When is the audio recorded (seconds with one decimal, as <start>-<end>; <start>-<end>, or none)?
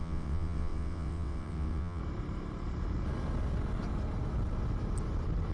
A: 2.0-5.5